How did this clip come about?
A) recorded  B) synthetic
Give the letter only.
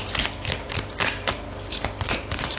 A